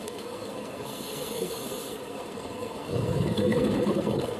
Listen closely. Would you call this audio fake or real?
fake